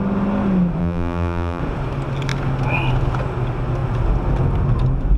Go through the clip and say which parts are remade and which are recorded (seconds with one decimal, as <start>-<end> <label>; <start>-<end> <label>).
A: 0.0-0.8 recorded; 0.8-1.6 remade; 1.6-5.2 recorded